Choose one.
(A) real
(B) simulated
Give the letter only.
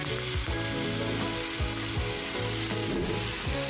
A